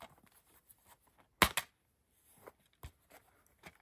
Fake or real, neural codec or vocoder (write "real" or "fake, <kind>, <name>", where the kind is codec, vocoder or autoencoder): real